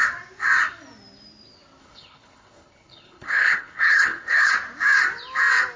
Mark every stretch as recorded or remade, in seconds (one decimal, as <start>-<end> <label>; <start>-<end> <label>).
0.0-1.8 recorded; 1.8-4.5 remade; 4.5-5.8 recorded

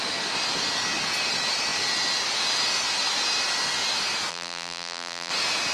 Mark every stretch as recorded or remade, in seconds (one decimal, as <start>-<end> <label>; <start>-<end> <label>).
0.0-4.3 recorded; 4.3-5.3 remade; 5.3-5.7 recorded